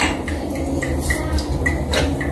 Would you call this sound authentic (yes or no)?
yes